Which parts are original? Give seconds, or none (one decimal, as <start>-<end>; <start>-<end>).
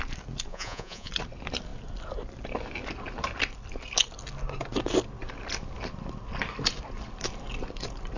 0.0-0.5; 1.1-8.2